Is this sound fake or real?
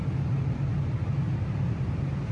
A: real